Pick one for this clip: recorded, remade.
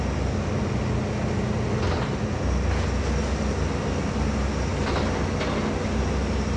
recorded